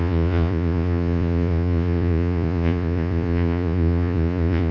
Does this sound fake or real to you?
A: fake